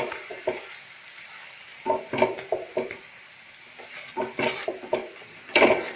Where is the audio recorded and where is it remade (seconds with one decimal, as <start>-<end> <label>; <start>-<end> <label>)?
0.0-1.7 remade; 1.7-2.9 recorded; 2.9-6.0 remade